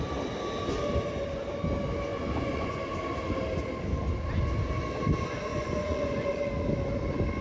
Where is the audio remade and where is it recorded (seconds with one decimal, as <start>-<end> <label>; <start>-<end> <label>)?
0.0-2.1 recorded; 2.1-2.8 remade; 2.8-5.5 recorded; 5.5-6.5 remade; 6.5-7.4 recorded